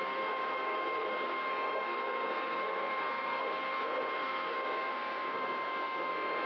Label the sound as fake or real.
fake